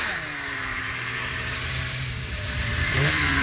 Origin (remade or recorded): remade